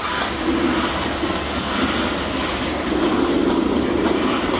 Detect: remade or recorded recorded